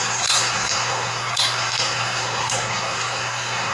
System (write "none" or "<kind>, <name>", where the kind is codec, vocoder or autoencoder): codec, SNAC